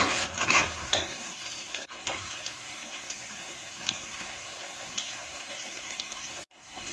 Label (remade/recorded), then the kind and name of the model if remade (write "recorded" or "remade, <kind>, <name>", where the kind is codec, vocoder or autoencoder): remade, codec, SNAC